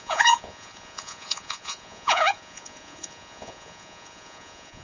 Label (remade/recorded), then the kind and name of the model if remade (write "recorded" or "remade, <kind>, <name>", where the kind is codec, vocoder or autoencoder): remade, vocoder, Vocos